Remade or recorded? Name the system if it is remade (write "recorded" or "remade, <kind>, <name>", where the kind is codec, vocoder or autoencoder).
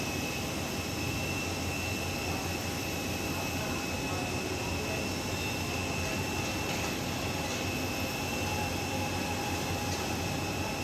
recorded